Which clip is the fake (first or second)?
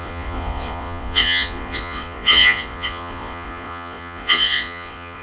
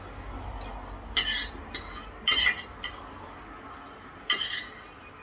first